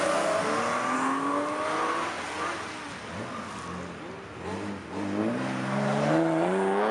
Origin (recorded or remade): recorded